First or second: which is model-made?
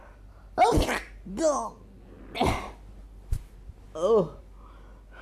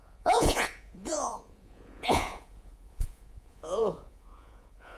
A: second